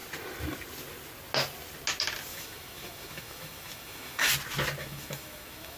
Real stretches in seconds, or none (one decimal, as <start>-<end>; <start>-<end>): 0.0-2.3; 4.3-4.8